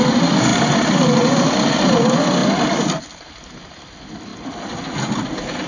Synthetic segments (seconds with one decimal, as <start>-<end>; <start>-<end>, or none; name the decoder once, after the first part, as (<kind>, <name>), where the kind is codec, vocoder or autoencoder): 0.5-2.0 (vocoder, BigVGAN v2)